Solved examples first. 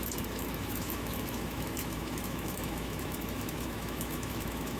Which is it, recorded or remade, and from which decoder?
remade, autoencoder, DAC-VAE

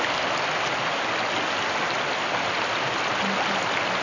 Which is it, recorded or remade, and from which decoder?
recorded